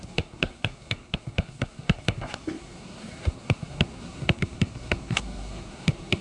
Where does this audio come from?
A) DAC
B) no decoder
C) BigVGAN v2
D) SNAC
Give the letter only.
D